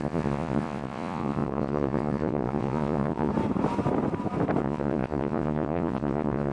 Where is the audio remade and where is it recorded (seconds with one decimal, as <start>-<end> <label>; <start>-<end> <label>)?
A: 0.0-3.3 remade; 3.3-4.6 recorded; 4.6-6.5 remade